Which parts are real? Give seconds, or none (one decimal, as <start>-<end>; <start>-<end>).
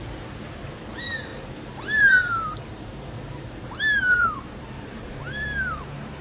0.0-1.3; 5.0-6.2